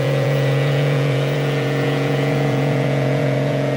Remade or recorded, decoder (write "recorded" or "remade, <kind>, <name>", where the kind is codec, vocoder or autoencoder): remade, vocoder, Vocos